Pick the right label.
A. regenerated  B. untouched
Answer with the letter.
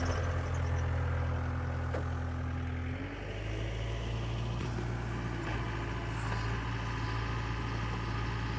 B